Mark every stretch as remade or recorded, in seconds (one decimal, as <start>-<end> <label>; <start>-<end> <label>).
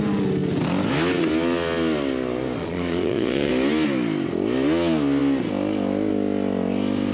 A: 0.0-2.6 recorded; 2.6-3.5 remade; 3.5-7.1 recorded